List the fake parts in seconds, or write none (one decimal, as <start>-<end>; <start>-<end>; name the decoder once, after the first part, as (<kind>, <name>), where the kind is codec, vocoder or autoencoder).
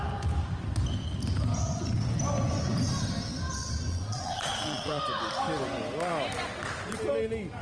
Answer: 3.9-5.0 (vocoder, Vocos)